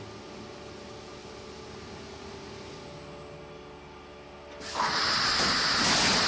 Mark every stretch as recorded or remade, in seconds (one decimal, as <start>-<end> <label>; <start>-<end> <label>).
0.0-6.3 recorded

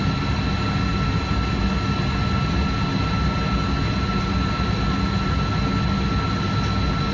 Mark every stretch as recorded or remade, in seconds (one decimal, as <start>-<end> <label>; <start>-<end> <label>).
0.0-7.1 recorded

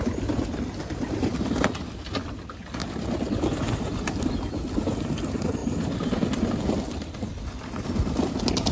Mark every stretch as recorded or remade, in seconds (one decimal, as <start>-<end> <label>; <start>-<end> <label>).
0.0-8.7 recorded

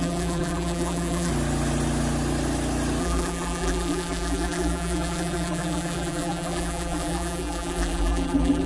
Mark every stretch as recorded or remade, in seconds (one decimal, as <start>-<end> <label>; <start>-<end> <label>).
0.0-1.3 remade; 1.3-3.0 recorded; 3.0-8.7 remade

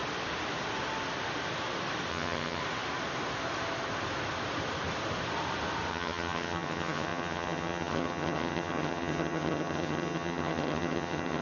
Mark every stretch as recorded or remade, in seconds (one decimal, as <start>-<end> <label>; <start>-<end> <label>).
0.0-2.1 recorded; 2.1-2.6 remade; 2.6-5.9 recorded; 5.9-11.4 remade

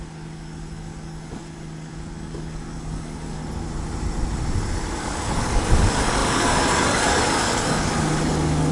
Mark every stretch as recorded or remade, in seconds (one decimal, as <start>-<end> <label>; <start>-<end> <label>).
0.0-3.4 remade; 3.4-5.0 recorded; 5.0-8.7 remade